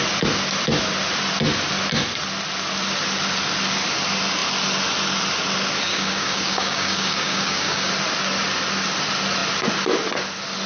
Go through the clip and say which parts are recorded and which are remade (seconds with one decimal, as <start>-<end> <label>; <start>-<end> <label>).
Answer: 0.0-5.9 recorded; 5.9-7.9 remade; 7.9-10.7 recorded